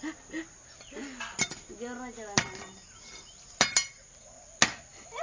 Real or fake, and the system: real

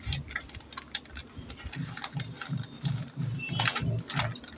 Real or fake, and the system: real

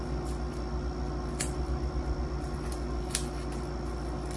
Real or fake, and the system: real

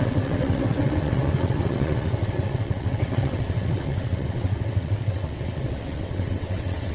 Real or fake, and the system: fake, vocoder, WaveNeXt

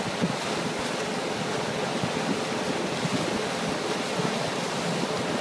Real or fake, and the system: real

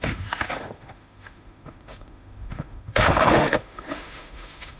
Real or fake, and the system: fake, autoencoder, DAC-VAE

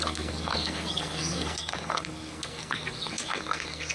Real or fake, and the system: fake, codec, SNAC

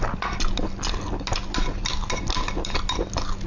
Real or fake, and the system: real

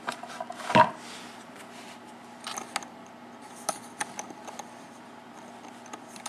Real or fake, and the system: real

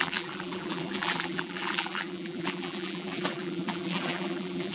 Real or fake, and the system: fake, vocoder, BigVGAN v2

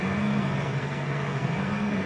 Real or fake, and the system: fake, codec, SNAC